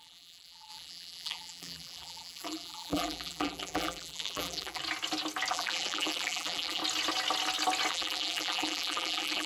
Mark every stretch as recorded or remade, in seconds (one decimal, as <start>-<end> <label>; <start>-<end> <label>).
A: 0.0-4.8 remade; 4.8-5.5 recorded; 5.5-6.8 remade; 6.8-7.9 recorded; 7.9-9.5 remade

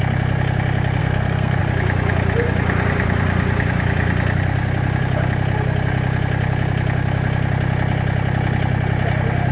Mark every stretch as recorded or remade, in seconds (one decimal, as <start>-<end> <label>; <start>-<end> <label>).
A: 0.0-1.0 recorded; 1.0-1.6 remade; 1.6-9.5 recorded

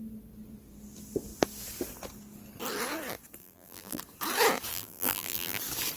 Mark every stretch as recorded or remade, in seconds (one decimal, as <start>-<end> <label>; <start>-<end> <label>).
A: 0.0-3.4 recorded; 3.4-4.0 remade; 4.0-4.7 recorded; 4.7-5.6 remade; 5.6-6.0 recorded

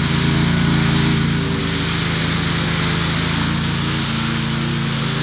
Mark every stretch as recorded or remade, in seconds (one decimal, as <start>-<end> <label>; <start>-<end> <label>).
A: 0.0-5.2 recorded

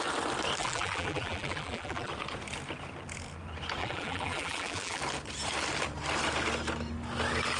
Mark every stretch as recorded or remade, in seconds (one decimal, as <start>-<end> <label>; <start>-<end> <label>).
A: 0.0-0.6 recorded; 0.6-2.1 remade; 2.1-3.8 recorded; 3.8-5.0 remade; 5.0-7.6 recorded

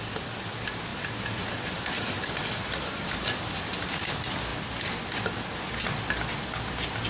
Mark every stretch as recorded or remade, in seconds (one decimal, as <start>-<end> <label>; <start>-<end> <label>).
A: 0.0-7.1 recorded